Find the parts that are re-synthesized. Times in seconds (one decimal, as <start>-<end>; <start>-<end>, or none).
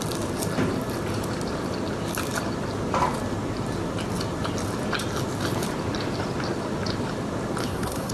7.6-8.1